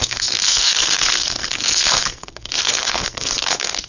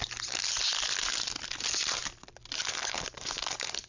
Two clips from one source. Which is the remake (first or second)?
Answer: first